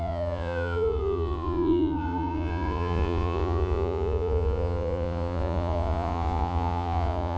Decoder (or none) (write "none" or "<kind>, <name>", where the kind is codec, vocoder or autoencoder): vocoder, Vocos